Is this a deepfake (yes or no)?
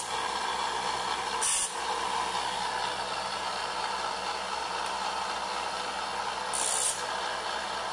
no